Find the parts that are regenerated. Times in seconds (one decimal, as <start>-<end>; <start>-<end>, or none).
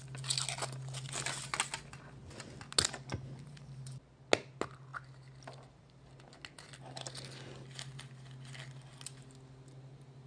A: none